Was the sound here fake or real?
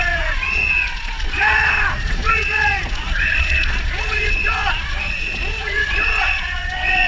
fake